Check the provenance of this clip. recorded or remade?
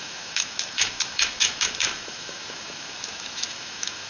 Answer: remade